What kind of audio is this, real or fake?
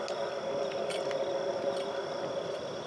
real